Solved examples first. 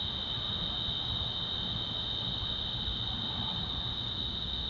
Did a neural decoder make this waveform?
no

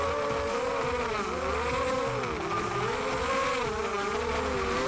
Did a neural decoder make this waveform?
no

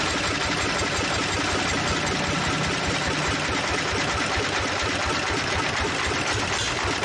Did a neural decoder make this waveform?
no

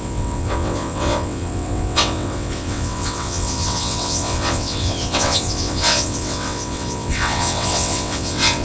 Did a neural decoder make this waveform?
yes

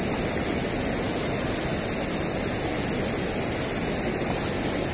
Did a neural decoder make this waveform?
no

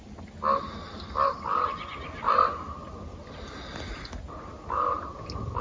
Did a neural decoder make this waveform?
no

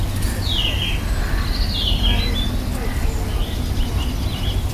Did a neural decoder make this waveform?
no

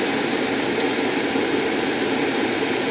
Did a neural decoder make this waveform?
no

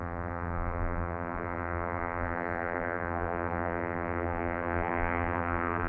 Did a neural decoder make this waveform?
yes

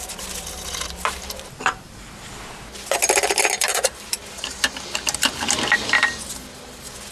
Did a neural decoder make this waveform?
no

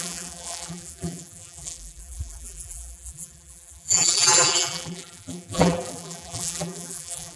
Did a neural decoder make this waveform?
yes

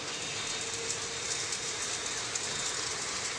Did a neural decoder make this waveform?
no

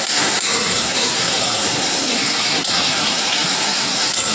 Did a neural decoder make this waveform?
yes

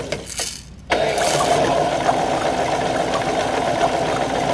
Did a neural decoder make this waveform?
no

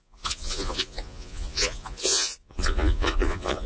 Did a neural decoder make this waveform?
yes